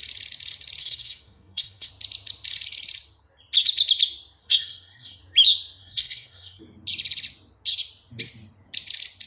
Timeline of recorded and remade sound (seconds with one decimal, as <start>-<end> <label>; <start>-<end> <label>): 0.0-0.8 recorded; 0.8-1.9 remade; 1.9-4.4 recorded; 4.4-5.2 remade; 5.2-5.8 recorded; 5.8-6.6 remade; 6.6-9.3 recorded